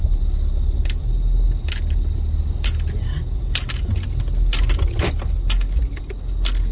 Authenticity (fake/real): real